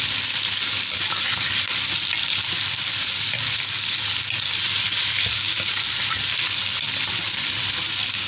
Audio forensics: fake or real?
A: real